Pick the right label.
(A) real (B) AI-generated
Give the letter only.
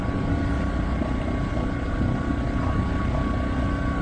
A